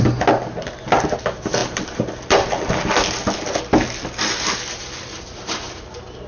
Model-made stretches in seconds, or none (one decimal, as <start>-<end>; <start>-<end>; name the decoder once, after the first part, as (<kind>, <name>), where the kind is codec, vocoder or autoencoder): none